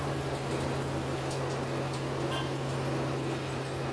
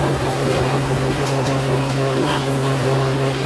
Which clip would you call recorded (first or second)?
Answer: first